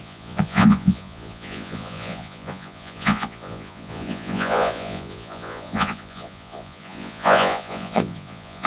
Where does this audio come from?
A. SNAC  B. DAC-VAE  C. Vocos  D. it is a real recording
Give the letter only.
C